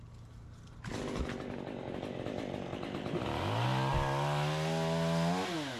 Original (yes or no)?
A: yes